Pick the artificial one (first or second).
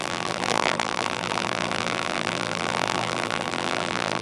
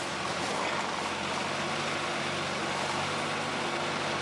first